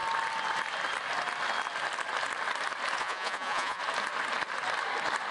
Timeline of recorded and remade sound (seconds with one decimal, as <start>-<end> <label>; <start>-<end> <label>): 0.0-3.0 recorded; 3.0-3.8 remade; 3.8-5.3 recorded